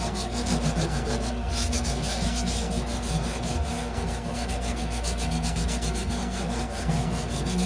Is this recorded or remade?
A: remade